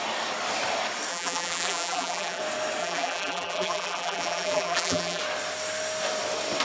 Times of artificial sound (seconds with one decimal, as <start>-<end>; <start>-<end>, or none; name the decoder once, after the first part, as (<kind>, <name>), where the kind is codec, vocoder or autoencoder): 1.1-2.4 (vocoder, BigVGAN v2); 2.8-5.2